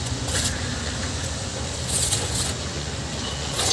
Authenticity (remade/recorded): remade